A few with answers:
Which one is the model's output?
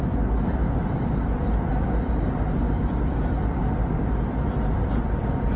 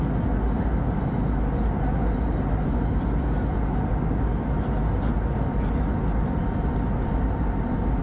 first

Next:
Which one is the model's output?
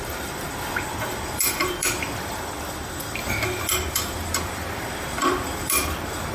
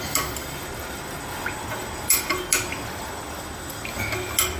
first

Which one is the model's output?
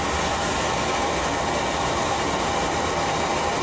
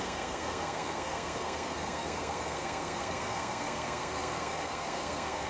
second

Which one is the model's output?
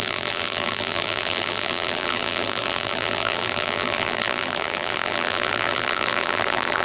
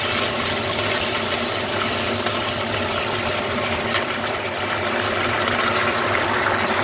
first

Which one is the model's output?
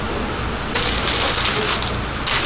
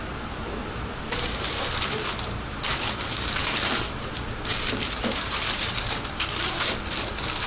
second